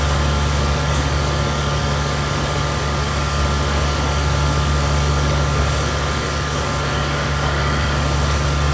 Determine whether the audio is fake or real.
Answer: fake